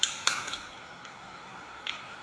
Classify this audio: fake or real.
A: fake